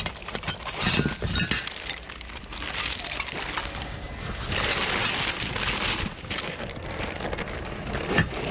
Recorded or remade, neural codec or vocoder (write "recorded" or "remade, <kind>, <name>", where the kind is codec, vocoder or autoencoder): recorded